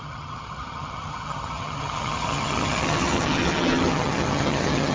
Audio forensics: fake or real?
fake